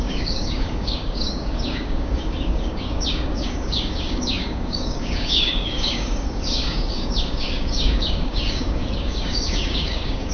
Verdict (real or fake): fake